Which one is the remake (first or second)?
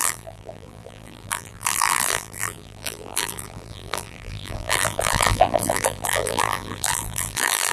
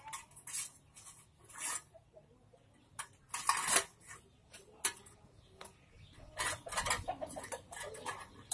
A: first